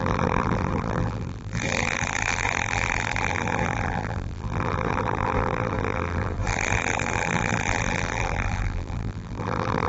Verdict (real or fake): fake